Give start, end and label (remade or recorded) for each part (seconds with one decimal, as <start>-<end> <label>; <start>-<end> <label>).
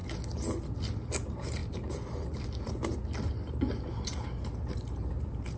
0.0-5.6 recorded